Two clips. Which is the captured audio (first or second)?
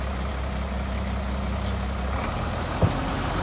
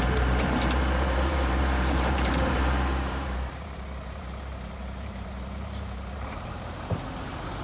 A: first